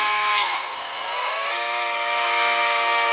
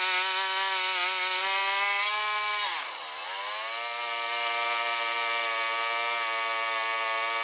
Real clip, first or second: second